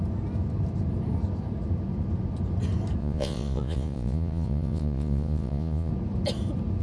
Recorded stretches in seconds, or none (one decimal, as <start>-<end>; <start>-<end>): 0.0-3.0; 5.9-6.8

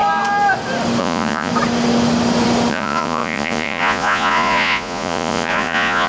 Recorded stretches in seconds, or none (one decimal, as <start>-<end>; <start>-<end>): 0.0-1.0; 1.5-2.7